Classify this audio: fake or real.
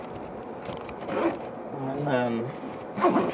real